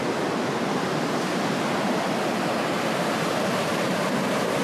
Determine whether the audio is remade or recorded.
recorded